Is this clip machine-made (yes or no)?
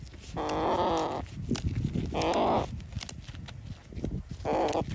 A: no